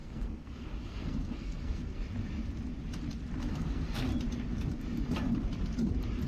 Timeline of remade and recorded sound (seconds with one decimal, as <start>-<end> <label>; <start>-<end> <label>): 0.0-2.0 remade; 2.0-3.5 recorded; 3.5-4.1 remade; 4.1-6.3 recorded